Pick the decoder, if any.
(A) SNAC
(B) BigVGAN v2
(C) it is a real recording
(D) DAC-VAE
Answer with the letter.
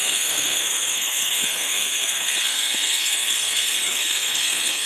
A